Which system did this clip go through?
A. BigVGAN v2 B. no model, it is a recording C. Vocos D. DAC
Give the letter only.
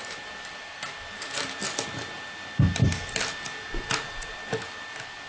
B